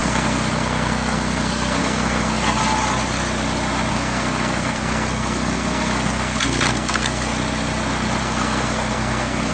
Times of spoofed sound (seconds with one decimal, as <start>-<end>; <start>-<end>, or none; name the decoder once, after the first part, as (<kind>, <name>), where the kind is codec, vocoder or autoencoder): 0.0-2.6 (codec, SNAC); 3.9-7.3; 8.2-9.5